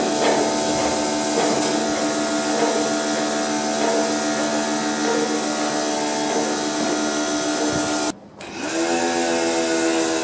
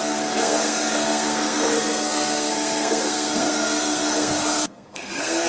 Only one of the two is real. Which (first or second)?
first